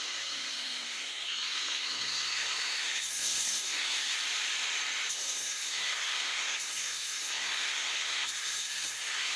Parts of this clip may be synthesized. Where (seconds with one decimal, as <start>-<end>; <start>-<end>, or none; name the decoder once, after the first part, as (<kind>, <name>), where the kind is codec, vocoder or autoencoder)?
0.0-4.2 (codec, SNAC); 5.1-9.4